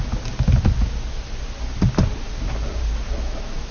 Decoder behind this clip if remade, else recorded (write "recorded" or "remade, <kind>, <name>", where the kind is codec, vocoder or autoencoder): recorded